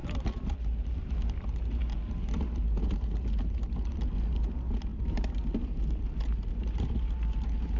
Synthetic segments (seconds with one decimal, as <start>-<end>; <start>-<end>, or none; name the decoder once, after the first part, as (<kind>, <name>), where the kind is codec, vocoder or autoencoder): none